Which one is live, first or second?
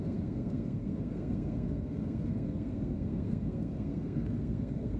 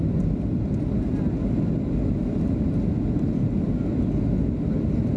second